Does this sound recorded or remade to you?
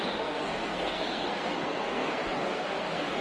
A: remade